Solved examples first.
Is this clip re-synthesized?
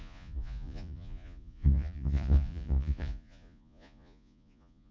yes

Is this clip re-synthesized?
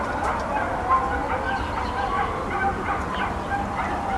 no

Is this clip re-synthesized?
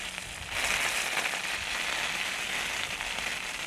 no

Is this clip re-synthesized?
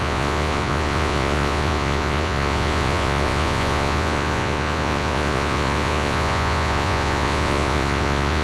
yes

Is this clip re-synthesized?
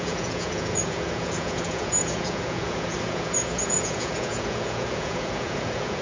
yes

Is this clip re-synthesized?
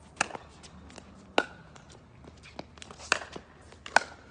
no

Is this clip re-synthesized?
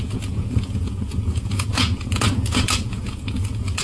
yes